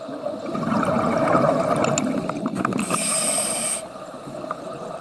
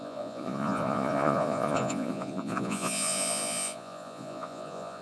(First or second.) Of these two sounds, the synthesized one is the second